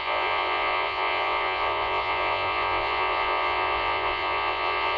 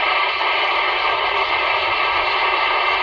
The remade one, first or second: first